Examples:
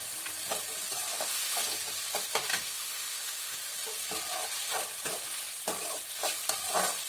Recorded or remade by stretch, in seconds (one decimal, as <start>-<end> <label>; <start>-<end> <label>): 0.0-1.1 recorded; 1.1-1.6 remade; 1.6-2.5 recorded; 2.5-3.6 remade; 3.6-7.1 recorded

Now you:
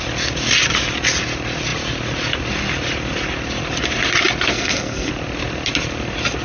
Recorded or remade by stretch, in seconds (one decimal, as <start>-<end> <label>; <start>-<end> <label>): 0.0-4.5 recorded; 4.5-5.1 remade; 5.1-6.4 recorded

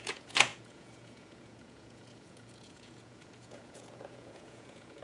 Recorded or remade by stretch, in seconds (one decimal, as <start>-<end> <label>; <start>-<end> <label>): 0.0-5.0 remade